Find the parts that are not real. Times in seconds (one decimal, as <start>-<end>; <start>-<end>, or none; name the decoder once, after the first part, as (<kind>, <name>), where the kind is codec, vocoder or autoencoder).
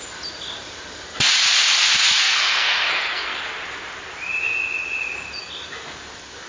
2.2-3.4 (codec, SNAC)